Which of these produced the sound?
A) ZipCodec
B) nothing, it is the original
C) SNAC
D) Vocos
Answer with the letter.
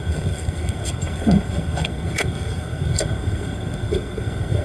C